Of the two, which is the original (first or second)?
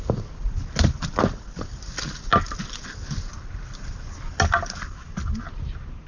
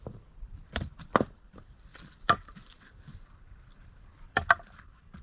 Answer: first